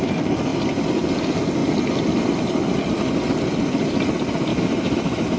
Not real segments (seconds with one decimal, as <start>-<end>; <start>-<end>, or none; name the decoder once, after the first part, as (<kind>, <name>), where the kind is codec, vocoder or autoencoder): 4.5-5.4 (autoencoder, DAC-VAE)